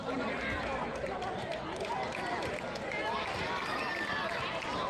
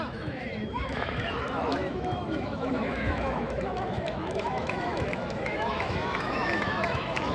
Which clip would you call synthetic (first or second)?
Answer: second